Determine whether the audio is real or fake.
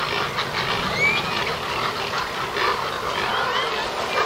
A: real